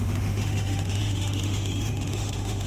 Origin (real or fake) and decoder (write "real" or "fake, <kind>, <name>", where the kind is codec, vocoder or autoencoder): fake, autoencoder, DAC-VAE